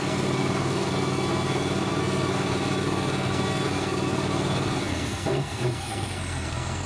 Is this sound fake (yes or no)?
yes